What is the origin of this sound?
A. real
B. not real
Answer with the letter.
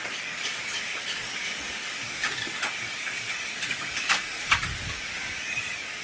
B